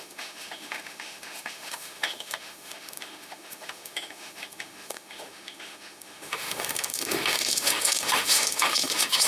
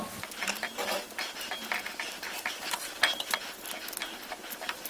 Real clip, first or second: second